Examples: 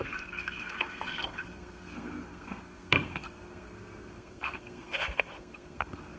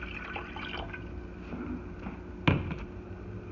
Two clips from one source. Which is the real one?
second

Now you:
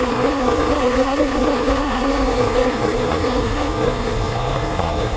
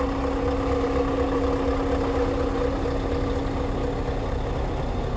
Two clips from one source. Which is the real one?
second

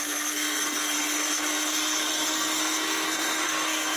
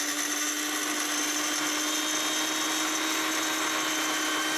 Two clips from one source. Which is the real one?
second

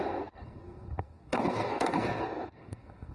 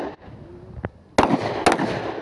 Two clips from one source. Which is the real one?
second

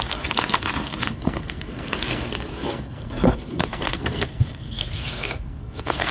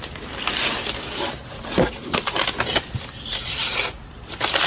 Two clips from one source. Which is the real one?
second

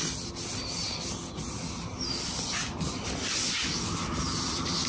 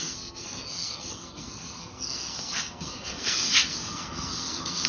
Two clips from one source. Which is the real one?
first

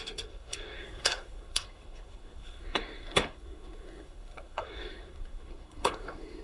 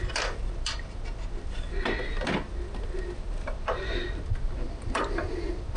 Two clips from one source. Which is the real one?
second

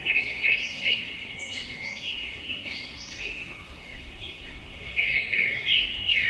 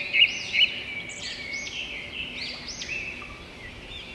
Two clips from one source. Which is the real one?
second